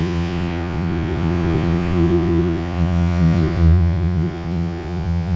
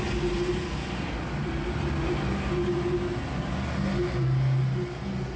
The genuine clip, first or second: second